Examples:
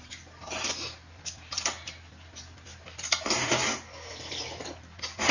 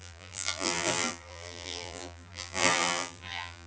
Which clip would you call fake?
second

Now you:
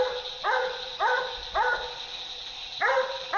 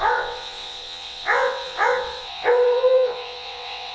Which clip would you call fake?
second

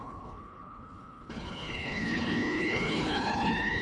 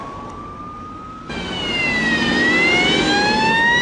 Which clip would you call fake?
first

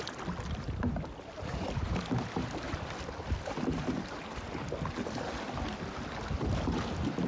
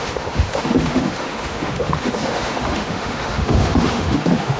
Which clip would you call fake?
second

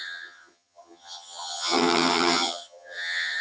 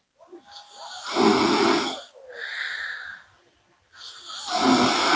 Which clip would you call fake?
first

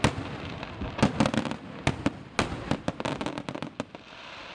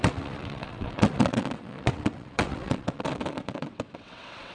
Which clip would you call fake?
second